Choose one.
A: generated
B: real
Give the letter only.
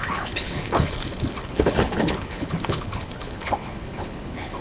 A